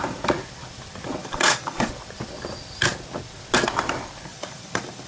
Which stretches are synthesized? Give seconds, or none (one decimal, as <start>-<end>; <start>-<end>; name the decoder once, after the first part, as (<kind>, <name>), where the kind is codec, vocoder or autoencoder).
1.2-1.9 (vocoder, BigVGAN v2); 4.3-5.1